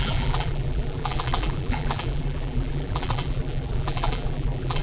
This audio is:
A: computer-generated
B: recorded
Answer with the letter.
A